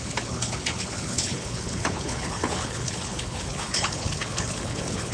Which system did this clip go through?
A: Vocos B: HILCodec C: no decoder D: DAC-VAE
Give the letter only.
B